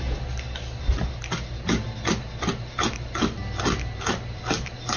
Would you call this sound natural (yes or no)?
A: yes